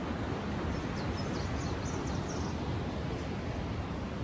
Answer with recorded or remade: recorded